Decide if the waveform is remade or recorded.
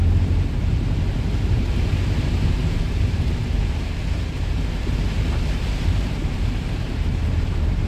remade